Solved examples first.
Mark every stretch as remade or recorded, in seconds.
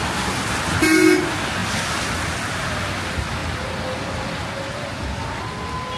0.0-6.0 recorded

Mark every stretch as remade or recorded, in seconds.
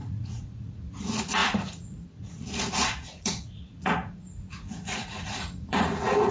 0.0-6.3 remade